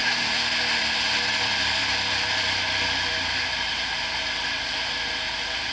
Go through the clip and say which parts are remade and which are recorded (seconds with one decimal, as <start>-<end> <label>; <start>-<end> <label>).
0.0-5.7 recorded